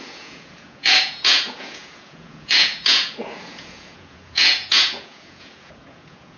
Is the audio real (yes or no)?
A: no